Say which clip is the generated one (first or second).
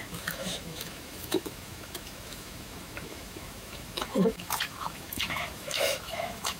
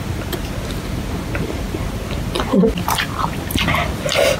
first